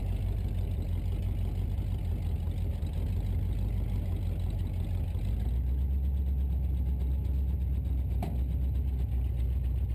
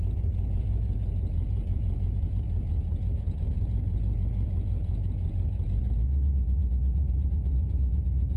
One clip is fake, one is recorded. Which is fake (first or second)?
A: second